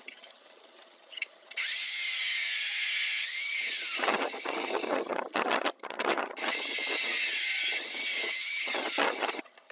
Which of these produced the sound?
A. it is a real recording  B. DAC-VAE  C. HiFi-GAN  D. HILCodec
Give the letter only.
C